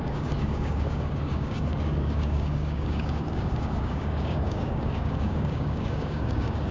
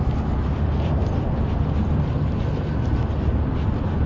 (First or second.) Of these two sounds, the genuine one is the second